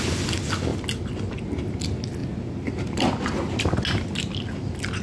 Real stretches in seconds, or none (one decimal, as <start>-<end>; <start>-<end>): 0.0-5.0